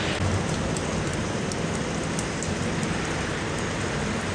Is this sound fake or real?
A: real